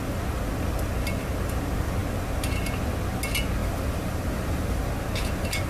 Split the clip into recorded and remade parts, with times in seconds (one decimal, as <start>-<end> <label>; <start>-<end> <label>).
0.0-3.6 recorded; 3.6-4.8 remade; 4.8-5.7 recorded